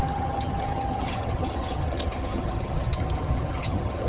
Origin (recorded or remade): remade